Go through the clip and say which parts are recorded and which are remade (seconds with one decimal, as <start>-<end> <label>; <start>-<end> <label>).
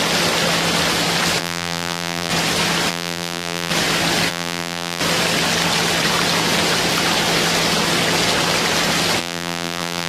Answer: 0.0-1.4 recorded; 1.4-2.3 remade; 2.3-2.9 recorded; 2.9-3.7 remade; 3.7-4.3 recorded; 4.3-5.0 remade; 5.0-9.2 recorded; 9.2-10.1 remade